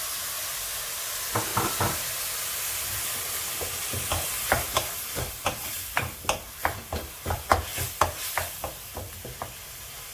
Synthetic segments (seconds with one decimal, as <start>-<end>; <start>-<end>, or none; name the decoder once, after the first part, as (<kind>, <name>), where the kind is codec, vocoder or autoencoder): 0.0-4.3 (vocoder, BigVGAN v2); 5.3-7.7; 8.7-10.1